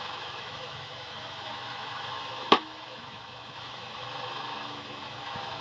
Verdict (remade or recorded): remade